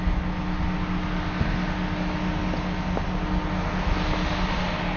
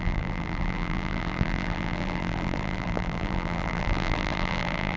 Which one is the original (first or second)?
first